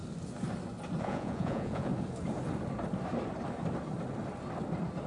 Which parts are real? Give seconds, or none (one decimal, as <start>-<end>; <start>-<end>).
0.0-1.0; 1.9-5.1